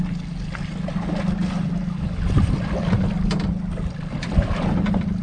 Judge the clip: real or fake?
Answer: real